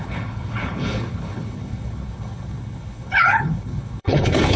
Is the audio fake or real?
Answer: fake